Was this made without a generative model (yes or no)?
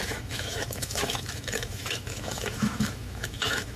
no